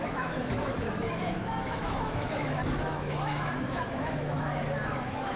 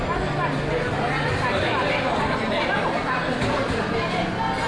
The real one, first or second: second